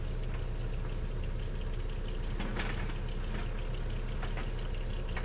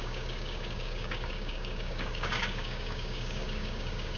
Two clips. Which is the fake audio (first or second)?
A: second